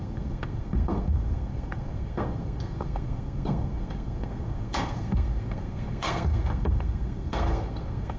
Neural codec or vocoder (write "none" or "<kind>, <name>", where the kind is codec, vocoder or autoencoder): codec, SNAC